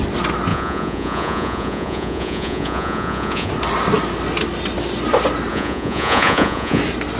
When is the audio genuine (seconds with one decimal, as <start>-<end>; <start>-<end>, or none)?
0.0-0.5; 3.5-5.5; 6.8-7.2